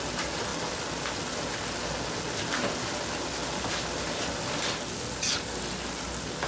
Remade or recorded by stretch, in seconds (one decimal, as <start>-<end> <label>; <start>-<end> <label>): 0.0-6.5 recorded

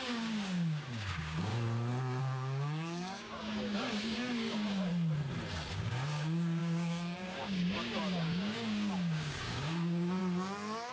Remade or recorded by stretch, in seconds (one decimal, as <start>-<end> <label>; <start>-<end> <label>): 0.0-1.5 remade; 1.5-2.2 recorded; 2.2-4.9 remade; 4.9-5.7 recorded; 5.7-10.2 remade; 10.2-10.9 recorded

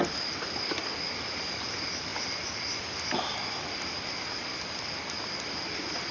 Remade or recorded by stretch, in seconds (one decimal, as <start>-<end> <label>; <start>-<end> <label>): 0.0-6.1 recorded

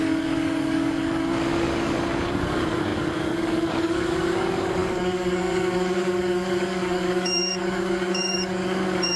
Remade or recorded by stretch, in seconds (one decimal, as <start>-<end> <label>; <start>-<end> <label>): 0.0-9.2 remade

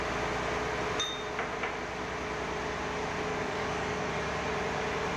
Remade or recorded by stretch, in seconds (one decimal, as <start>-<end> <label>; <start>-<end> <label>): 0.0-3.3 recorded; 3.3-4.1 remade; 4.1-5.2 recorded